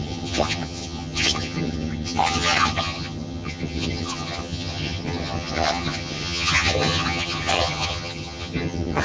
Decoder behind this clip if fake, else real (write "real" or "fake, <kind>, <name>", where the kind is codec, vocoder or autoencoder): fake, vocoder, HiFi-GAN